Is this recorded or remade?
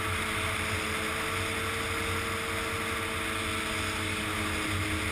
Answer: recorded